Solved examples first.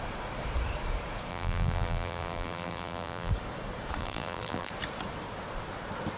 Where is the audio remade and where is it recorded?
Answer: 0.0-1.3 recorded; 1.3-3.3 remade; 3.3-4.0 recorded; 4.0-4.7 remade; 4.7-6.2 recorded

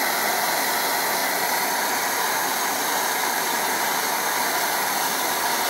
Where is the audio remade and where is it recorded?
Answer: 0.0-5.7 recorded

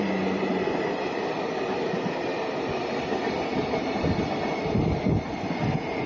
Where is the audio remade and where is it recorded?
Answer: 0.0-6.1 recorded

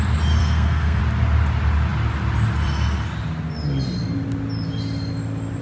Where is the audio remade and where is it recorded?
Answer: 0.0-0.4 recorded; 0.4-1.0 remade; 1.0-5.6 recorded